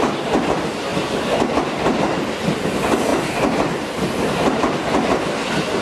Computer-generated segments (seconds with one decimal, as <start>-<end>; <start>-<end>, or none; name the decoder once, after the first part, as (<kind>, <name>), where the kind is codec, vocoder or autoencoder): none